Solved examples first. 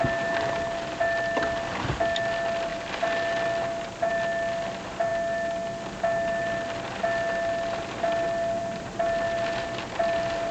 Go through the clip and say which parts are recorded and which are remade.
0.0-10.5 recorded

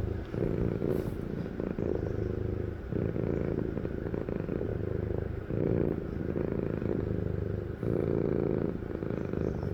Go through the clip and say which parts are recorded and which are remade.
0.0-4.7 recorded; 4.7-6.2 remade; 6.2-9.7 recorded